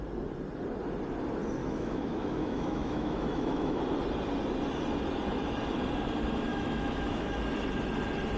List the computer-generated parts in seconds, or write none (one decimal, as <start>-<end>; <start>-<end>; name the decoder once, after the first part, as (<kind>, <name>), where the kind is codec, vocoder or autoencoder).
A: 1.6-3.8 (autoencoder, DAC-VAE); 6.5-7.4